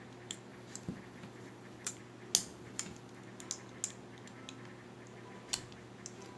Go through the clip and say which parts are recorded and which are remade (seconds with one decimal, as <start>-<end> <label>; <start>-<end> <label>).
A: 0.0-0.5 recorded; 0.5-2.0 remade; 2.0-2.5 recorded; 2.5-3.2 remade; 3.2-6.4 recorded